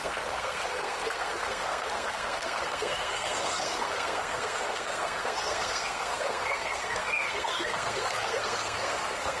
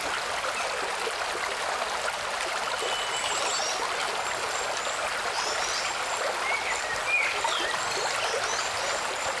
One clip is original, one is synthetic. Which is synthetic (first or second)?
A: first